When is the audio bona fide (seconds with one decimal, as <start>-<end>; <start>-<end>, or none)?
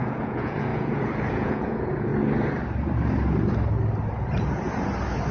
2.1-5.3